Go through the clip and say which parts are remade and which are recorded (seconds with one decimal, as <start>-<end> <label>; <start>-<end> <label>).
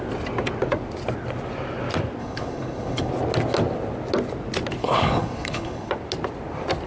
0.0-2.2 recorded; 2.2-3.1 remade; 3.1-4.8 recorded; 4.8-5.9 remade; 5.9-6.9 recorded